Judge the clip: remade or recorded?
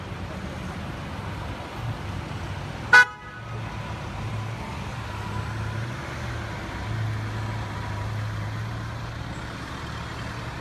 recorded